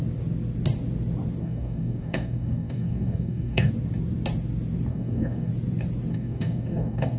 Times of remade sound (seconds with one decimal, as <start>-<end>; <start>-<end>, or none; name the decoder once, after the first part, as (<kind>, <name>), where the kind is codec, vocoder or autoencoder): 1.4-3.7 (codec, DAC); 4.9-5.5; 6.1-7.2